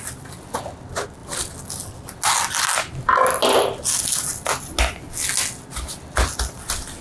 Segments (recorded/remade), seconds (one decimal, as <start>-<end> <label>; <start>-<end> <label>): 0.0-7.0 recorded